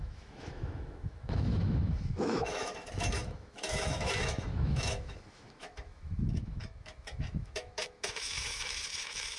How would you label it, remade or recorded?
remade